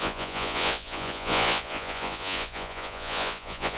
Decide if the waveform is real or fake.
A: fake